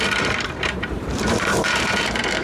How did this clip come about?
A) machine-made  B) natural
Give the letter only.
A